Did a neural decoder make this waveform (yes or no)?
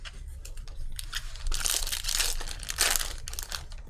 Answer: no